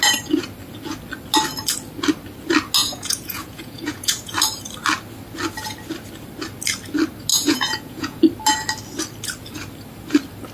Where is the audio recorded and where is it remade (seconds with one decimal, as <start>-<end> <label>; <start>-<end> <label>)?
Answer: 0.0-2.8 recorded; 2.8-4.3 remade; 4.3-7.3 recorded; 7.3-8.2 remade; 8.2-10.5 recorded